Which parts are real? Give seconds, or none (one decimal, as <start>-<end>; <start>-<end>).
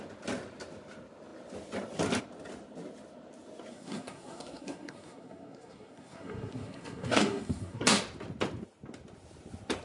0.0-3.7; 8.0-9.8